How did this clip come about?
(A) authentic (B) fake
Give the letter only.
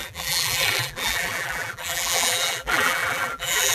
B